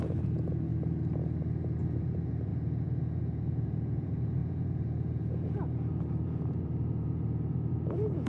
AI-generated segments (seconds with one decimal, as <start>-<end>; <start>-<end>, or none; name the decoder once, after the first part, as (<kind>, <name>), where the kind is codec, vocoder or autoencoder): 0.0-0.7 (vocoder, Vocos); 2.0-8.3